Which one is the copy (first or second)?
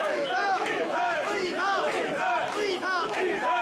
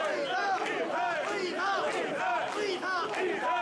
first